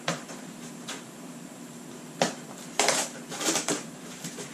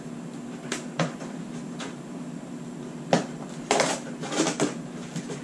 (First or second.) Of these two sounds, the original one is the second